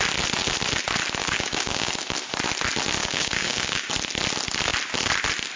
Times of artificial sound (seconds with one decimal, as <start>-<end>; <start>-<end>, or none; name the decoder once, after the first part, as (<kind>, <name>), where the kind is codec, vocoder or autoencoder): 1.2-1.9 (codec, DAC); 3.0-3.9